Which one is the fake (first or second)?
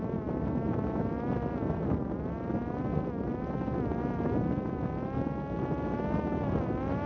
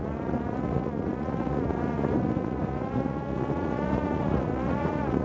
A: second